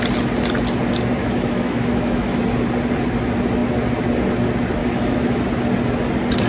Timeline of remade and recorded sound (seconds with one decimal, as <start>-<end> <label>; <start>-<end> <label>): 0.0-1.2 recorded; 1.2-2.4 remade; 2.4-4.8 recorded; 4.8-5.4 remade; 5.4-6.5 recorded